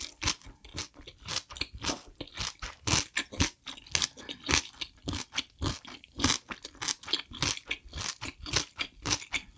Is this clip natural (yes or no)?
yes